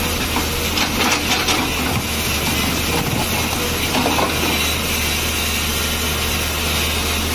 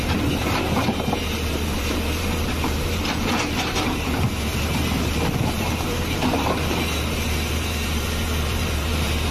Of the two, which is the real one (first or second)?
first